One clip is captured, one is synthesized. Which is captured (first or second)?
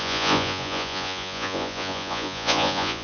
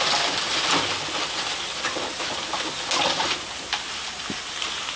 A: second